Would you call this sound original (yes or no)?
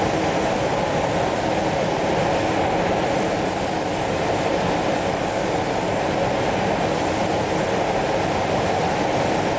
yes